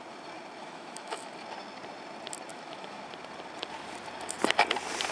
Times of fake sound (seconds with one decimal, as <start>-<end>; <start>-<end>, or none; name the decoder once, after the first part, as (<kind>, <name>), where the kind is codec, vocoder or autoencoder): 0.6-1.3 (autoencoder, DAC-VAE); 2.5-3.0